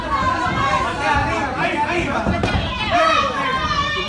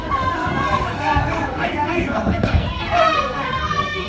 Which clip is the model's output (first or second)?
second